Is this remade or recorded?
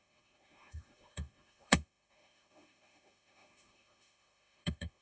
remade